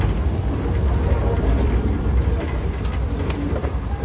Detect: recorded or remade remade